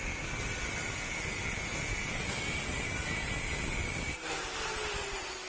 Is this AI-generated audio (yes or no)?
no